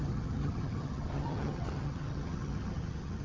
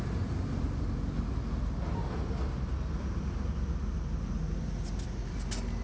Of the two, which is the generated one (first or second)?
first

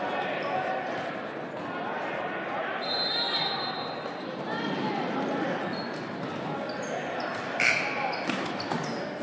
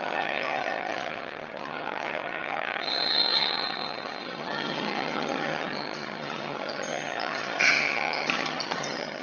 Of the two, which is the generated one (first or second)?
second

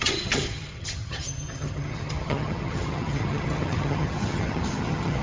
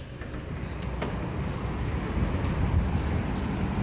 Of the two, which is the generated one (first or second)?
first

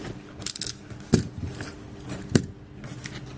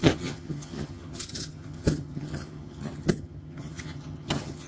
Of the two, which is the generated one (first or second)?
second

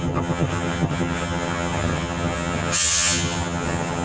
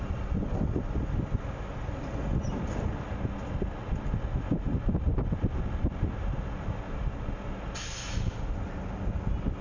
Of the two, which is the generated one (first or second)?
first